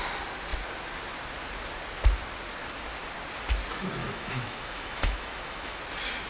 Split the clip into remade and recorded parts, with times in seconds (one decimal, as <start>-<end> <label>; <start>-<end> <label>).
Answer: 0.0-4.0 recorded; 4.0-5.8 remade; 5.8-6.3 recorded